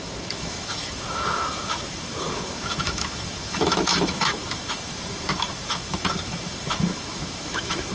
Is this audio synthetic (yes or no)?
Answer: yes